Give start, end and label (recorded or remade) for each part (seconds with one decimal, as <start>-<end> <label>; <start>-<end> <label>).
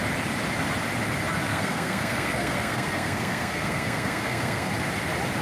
0.0-1.5 recorded; 1.5-4.7 remade; 4.7-5.4 recorded